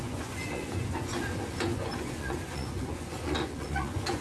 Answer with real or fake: fake